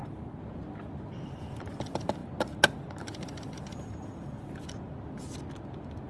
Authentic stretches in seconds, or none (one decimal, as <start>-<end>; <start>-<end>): 0.0-6.1